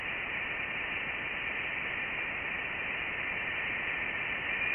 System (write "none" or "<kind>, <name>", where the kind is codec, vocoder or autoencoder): none